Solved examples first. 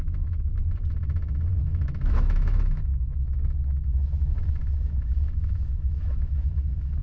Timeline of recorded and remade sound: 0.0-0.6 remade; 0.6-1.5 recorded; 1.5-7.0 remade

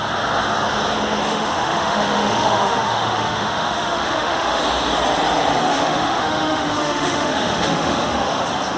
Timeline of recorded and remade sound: 0.0-1.3 recorded; 1.3-4.6 remade; 4.6-5.6 recorded; 5.6-8.4 remade; 8.4-8.8 recorded